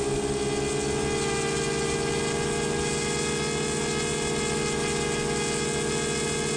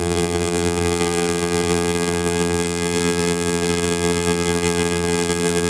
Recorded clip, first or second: first